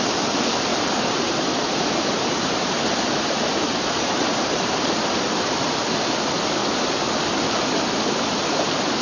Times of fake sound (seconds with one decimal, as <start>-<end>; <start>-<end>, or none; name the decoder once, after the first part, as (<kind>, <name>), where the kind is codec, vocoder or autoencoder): 0.7-4.7 (vocoder, BigVGAN v2)